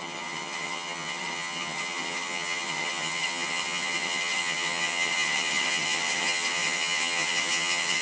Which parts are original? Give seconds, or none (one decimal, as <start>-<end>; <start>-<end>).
none